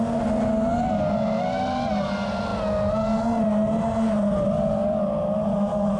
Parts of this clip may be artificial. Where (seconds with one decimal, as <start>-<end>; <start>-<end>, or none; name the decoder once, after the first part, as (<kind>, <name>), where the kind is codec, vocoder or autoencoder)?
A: 5.5-6.0 (autoencoder, DAC-VAE)